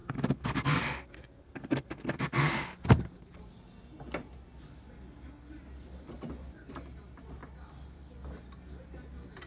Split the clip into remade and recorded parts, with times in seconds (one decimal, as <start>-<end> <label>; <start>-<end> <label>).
0.0-0.8 remade; 0.8-1.4 recorded; 1.4-2.5 remade; 2.5-9.5 recorded